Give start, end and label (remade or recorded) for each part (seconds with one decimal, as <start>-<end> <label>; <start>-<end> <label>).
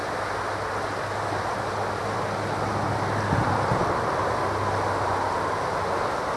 0.0-6.4 recorded